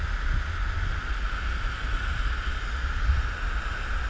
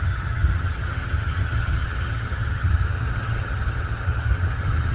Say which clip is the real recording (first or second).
first